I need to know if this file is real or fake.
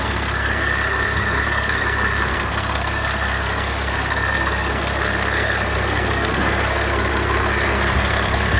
fake